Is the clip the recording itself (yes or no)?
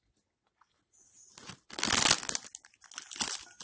yes